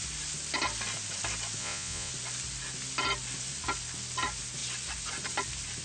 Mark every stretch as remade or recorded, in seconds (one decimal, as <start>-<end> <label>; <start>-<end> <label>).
0.0-1.6 recorded; 1.6-2.1 remade; 2.1-5.8 recorded